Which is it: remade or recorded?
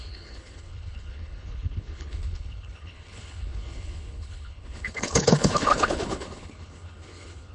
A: remade